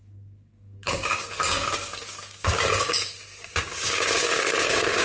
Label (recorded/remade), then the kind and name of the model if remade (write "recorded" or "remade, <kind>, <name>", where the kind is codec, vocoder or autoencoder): remade, codec, DAC